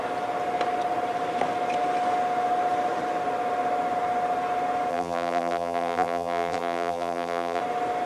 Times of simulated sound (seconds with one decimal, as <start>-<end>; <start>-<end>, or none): 4.9-7.6